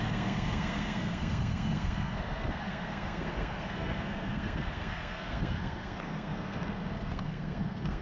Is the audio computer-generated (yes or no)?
yes